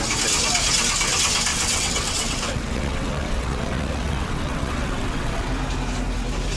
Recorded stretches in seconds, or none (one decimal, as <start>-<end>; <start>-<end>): 0.0-1.5; 5.5-6.6